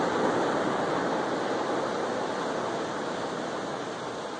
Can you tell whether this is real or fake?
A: real